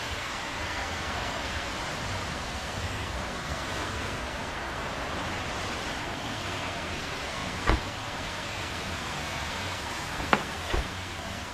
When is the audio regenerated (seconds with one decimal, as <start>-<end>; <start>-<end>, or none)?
0.0-1.7; 2.3-4.9; 6.0-11.5

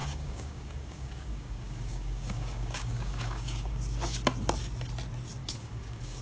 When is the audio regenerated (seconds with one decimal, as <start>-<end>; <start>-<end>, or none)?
0.0-3.7; 5.4-6.2

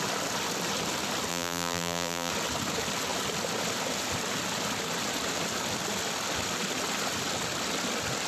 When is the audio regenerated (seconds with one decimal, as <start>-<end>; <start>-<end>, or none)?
1.3-2.3

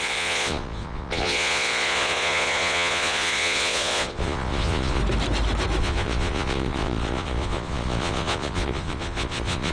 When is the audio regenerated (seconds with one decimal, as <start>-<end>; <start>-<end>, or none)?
0.0-5.0; 5.8-9.7

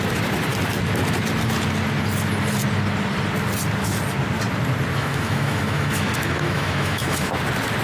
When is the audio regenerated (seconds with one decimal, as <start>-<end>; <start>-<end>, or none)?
5.0-7.3

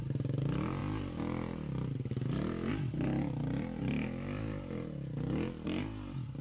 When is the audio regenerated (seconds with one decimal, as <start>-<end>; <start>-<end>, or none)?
none

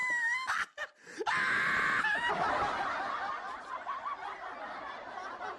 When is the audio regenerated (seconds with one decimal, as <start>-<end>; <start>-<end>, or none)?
none